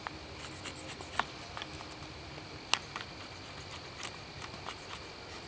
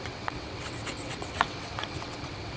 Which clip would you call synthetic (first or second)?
second